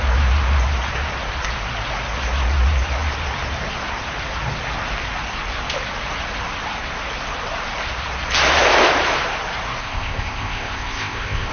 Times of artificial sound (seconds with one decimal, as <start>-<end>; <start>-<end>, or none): 9.8-11.5